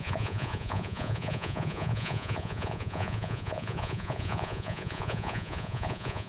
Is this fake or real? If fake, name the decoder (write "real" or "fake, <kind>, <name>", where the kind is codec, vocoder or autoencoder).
fake, vocoder, Vocos